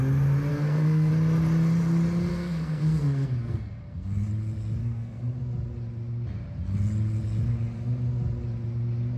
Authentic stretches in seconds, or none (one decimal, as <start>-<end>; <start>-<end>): 0.0-0.5; 1.1-2.3; 4.3-4.8; 5.4-9.2